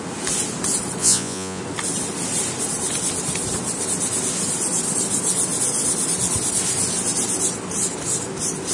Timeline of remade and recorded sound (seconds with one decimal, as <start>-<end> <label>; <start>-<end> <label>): 0.0-1.0 recorded; 1.0-1.6 remade; 1.6-8.7 recorded

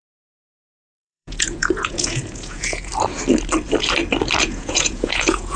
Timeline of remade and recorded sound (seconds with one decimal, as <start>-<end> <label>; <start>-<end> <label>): 0.0-2.9 remade; 2.9-4.4 recorded; 4.4-5.6 remade

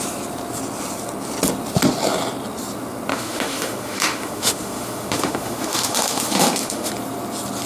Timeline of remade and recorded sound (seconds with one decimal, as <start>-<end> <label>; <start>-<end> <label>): 0.0-3.1 recorded; 3.1-6.9 remade; 6.9-7.7 recorded

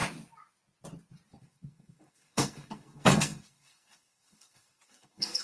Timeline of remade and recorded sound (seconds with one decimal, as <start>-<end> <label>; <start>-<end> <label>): 0.0-1.3 recorded; 1.3-5.4 remade

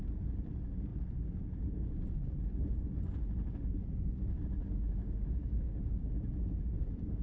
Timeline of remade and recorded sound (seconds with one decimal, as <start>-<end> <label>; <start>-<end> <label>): 0.0-5.0 recorded; 5.0-6.1 remade; 6.1-7.2 recorded

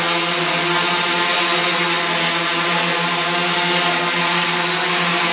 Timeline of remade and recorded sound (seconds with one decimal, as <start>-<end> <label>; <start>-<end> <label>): 0.0-5.3 recorded